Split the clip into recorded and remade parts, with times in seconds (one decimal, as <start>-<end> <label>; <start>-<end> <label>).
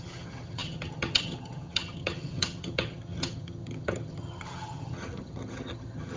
0.0-6.2 remade